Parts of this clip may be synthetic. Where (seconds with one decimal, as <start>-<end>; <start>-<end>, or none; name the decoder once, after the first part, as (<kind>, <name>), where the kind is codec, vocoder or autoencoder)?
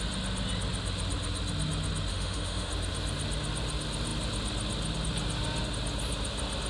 2.1-2.7 (autoencoder, DAC-VAE)